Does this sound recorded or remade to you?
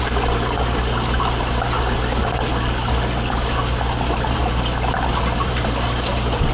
recorded